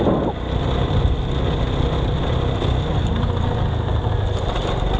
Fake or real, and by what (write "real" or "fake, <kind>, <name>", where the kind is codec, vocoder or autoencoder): real